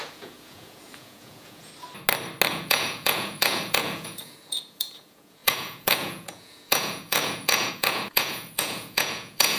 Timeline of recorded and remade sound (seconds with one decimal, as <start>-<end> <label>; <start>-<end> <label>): 0.0-1.7 remade; 1.7-2.5 recorded; 2.5-9.6 remade